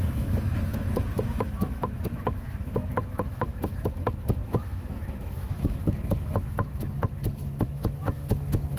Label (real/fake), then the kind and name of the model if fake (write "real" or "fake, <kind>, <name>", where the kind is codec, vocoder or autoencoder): fake, autoencoder, DAC-VAE